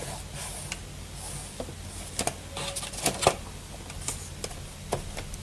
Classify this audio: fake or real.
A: real